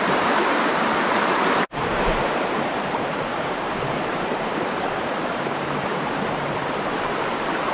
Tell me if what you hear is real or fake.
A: fake